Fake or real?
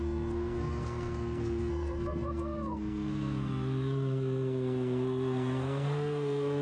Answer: fake